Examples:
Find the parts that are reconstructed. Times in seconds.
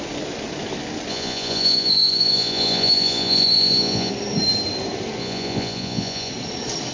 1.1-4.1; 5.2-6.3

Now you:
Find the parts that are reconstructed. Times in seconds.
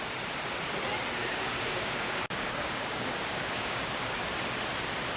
1.2-4.2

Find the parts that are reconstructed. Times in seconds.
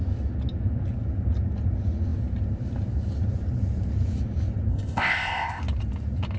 4.7-5.6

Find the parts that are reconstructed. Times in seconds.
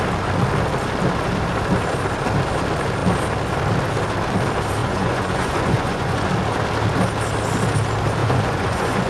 4.8-6.3; 8.2-9.1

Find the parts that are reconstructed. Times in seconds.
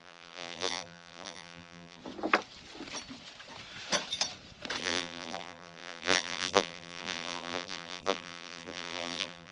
0.0-2.0; 4.8-9.5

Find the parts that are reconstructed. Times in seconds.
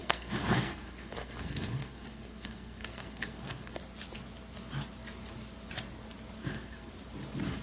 0.0-3.8; 6.4-6.9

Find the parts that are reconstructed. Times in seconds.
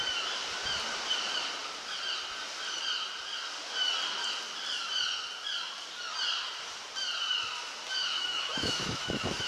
8.0-9.5